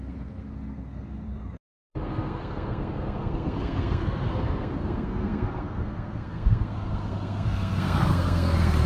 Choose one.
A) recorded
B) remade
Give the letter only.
B